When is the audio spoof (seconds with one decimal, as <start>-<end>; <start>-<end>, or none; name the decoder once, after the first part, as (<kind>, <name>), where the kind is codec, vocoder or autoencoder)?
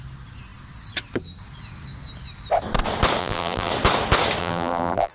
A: 3.2-3.7 (vocoder, BigVGAN v2); 4.4-5.1